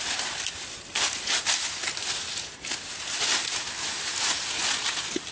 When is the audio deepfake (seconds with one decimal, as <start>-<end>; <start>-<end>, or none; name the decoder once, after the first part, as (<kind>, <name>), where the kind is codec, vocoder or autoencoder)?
none